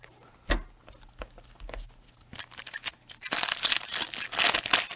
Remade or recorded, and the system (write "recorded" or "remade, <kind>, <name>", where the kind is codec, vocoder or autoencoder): recorded